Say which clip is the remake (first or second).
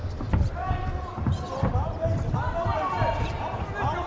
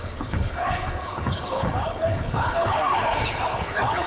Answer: second